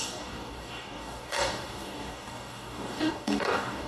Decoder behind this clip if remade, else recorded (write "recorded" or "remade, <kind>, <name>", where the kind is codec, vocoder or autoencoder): remade, codec, DAC